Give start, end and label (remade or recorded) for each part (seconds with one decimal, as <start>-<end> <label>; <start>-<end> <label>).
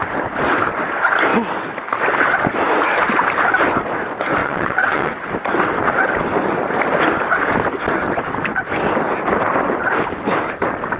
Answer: 0.0-4.4 recorded; 4.4-5.1 remade; 5.1-11.0 recorded